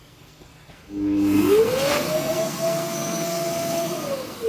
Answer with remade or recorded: remade